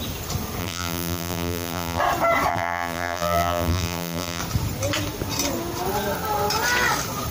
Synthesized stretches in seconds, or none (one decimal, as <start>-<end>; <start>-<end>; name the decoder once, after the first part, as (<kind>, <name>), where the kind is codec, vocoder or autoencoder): 0.6-2.0 (vocoder, BigVGAN v2); 2.5-4.4

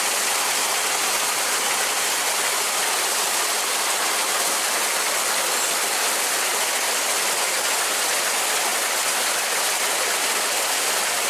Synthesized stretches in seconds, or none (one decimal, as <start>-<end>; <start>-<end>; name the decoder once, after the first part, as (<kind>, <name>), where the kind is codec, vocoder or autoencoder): 8.7-11.3 (vocoder, BigVGAN v2)